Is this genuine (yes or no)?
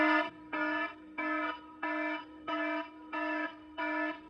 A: no